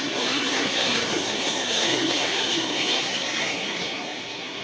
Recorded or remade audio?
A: remade